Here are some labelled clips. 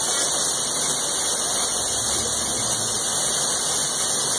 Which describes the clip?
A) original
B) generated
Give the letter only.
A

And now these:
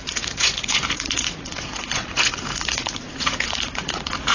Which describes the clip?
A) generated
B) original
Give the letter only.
A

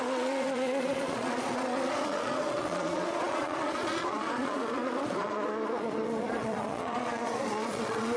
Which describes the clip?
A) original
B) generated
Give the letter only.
B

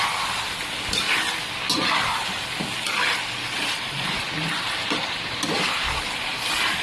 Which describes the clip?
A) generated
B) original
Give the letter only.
B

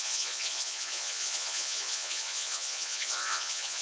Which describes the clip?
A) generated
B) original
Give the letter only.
A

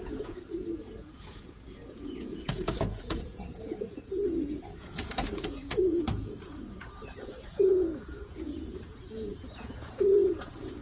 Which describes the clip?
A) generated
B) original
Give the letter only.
A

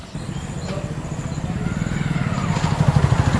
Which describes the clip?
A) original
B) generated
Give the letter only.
A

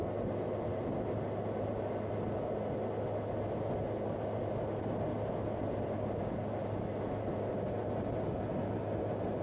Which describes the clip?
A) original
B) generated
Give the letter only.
A